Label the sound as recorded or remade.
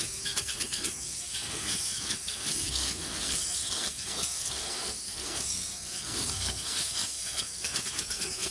remade